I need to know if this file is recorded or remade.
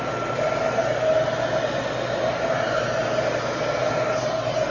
recorded